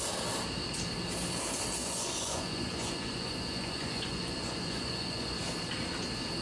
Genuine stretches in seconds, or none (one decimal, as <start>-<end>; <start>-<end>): 0.0-1.8; 5.4-6.4